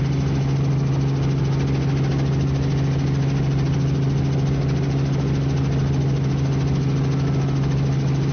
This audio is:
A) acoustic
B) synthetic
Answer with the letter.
A